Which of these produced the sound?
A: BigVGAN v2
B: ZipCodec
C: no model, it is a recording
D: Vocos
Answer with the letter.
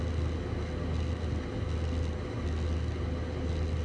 C